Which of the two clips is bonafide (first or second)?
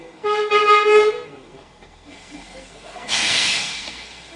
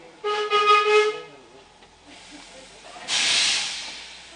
second